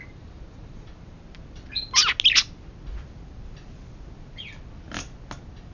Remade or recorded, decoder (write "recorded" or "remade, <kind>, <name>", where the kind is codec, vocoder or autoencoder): recorded